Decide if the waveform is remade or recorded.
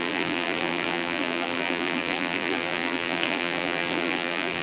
remade